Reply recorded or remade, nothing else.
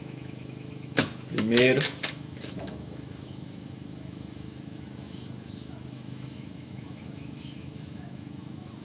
remade